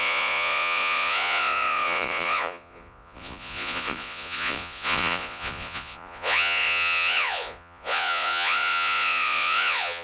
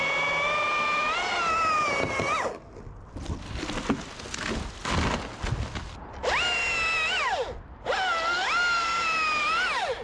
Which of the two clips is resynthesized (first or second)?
first